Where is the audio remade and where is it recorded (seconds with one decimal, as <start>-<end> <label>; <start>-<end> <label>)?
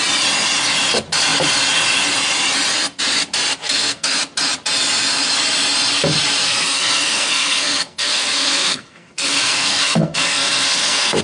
0.0-3.6 recorded; 3.6-4.2 remade; 4.2-6.4 recorded; 6.4-11.2 remade